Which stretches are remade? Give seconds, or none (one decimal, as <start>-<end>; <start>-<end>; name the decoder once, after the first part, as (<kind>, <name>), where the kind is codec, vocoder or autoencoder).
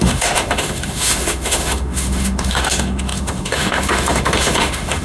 0.0-5.0 (autoencoder, DAC-VAE)